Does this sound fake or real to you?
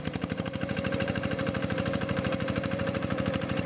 fake